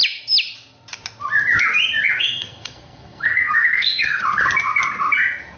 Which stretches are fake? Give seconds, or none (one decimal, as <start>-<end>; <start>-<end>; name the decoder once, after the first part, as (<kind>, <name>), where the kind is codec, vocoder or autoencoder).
2.2-4.2 (codec, SNAC)